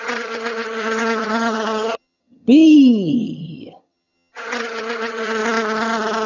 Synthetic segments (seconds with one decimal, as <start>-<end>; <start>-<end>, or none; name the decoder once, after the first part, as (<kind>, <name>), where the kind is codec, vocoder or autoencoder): 0.0-5.4 (vocoder, HiFi-GAN)